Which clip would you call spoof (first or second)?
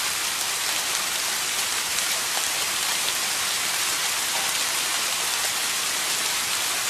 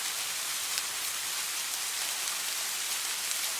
first